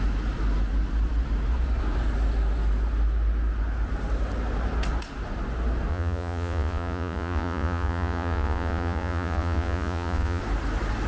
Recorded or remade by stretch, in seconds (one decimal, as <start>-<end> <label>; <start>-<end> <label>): 0.0-5.9 recorded; 5.9-10.4 remade; 10.4-11.1 recorded